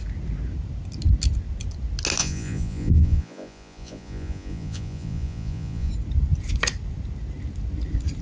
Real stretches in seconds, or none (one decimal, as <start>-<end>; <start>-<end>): 0.0-2.2; 5.9-8.2